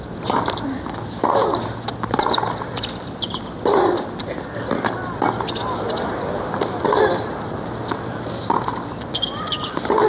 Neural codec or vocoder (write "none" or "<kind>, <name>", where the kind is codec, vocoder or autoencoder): none